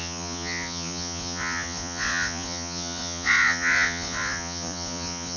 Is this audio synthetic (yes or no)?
yes